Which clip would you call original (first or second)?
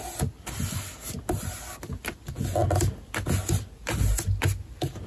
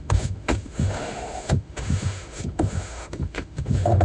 first